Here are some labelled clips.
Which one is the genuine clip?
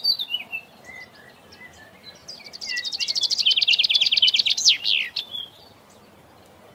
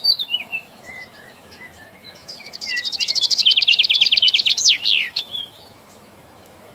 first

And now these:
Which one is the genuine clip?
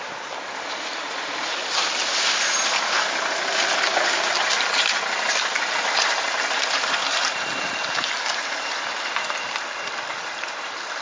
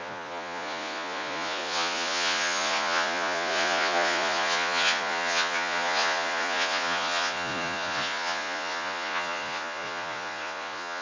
first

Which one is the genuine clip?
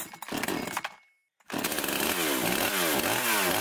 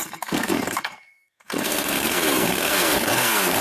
first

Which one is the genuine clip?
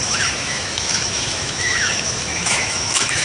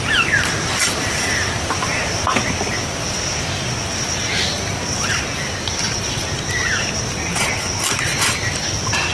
second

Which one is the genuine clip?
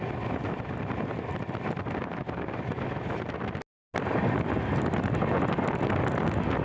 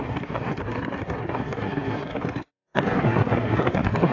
first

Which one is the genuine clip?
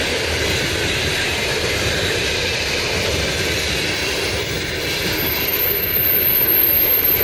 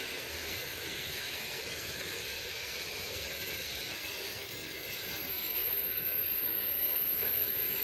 first